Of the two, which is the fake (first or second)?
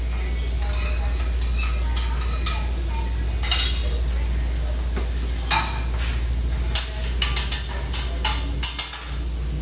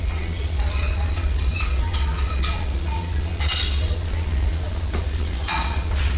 second